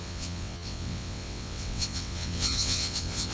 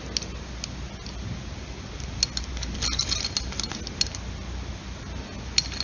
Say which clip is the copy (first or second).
first